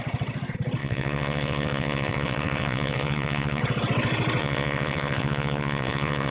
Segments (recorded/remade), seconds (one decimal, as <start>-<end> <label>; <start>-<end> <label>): 0.0-0.8 recorded; 0.8-3.6 remade; 3.6-4.4 recorded; 4.4-6.3 remade